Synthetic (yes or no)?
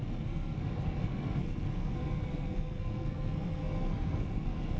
yes